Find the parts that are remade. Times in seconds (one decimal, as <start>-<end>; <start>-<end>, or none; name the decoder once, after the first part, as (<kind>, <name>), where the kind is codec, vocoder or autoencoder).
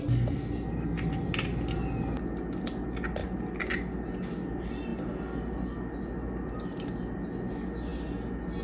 none